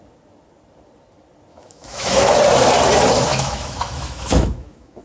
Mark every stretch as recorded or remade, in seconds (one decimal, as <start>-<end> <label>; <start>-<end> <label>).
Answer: 0.0-1.5 recorded; 1.5-2.3 remade; 2.3-3.3 recorded; 3.3-5.0 remade